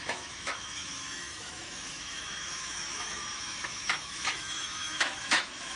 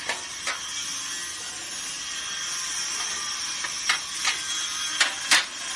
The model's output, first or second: first